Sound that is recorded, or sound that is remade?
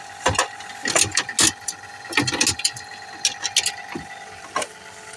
recorded